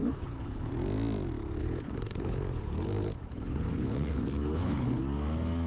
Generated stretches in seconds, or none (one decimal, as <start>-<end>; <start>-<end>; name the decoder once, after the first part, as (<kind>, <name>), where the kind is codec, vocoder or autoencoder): 0.0-0.7 (codec, HILCodec); 1.6-5.0